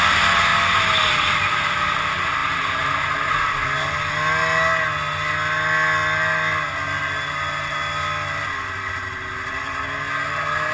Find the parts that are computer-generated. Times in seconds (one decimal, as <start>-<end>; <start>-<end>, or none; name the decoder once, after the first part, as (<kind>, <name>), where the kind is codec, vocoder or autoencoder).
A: none